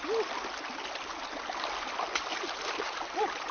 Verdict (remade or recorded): recorded